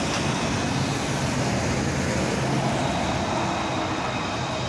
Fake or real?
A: real